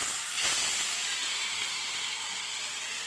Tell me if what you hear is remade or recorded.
recorded